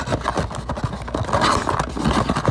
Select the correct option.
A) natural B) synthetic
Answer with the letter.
A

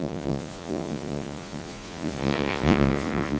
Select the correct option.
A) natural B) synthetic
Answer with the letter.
B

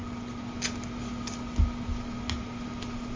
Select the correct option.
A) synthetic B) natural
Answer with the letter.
B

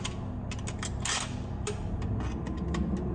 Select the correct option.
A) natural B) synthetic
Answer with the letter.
A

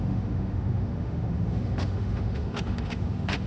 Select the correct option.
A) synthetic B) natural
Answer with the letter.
A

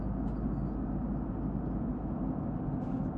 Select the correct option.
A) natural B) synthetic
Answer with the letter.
A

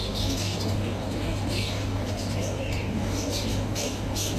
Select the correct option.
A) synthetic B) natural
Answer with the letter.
A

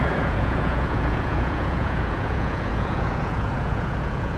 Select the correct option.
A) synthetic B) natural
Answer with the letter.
A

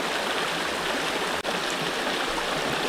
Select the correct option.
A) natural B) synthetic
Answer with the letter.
A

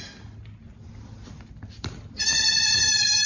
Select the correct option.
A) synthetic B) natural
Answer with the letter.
B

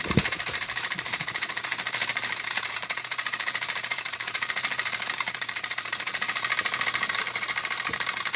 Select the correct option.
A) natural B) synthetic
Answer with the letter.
B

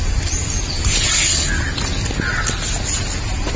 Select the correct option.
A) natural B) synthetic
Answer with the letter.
A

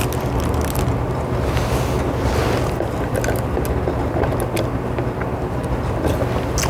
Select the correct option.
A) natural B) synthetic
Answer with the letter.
A